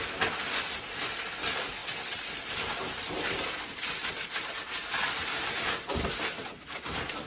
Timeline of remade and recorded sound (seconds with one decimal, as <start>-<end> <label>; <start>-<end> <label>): 0.0-7.3 recorded